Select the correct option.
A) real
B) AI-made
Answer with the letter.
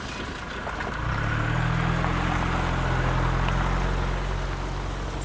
A